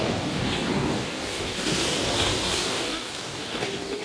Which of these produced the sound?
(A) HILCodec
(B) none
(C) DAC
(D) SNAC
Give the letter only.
C